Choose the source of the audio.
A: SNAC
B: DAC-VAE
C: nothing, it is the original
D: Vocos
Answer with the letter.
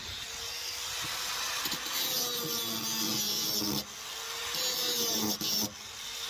C